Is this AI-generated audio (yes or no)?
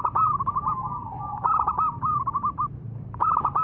yes